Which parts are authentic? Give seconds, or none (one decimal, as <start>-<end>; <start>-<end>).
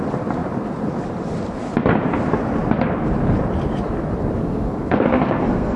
0.0-4.4